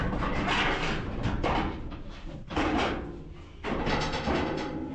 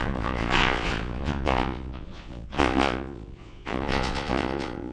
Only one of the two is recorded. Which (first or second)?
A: first